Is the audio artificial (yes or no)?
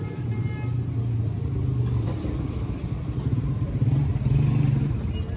no